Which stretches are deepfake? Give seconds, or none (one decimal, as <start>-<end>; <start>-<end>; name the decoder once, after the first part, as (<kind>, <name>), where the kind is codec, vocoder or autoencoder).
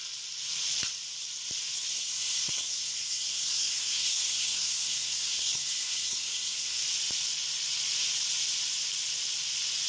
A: 1.9-6.8 (codec, SNAC)